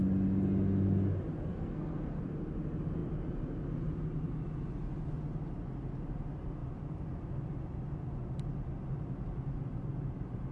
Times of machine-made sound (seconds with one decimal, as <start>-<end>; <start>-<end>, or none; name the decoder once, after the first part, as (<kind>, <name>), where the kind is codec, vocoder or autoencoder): 1.5-2.2 (codec, SNAC)